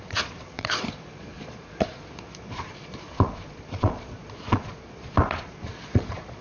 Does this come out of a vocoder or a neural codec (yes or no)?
yes